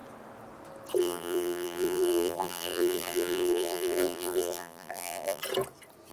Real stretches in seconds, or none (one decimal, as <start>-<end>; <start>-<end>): 0.0-1.0; 5.4-6.1